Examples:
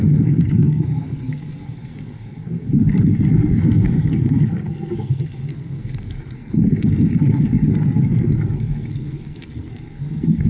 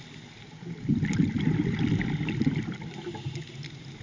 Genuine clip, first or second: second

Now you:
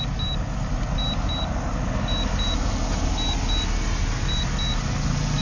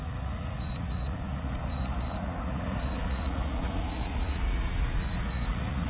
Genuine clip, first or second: first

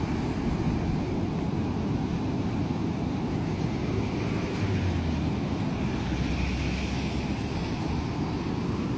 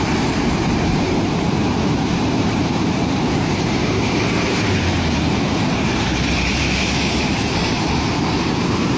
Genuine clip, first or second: first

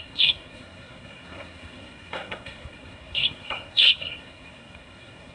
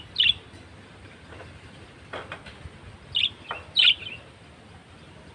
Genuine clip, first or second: second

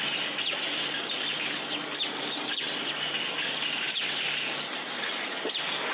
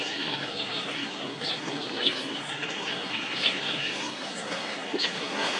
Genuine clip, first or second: first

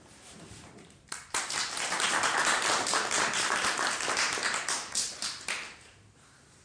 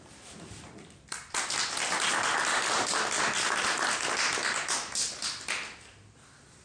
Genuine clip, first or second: second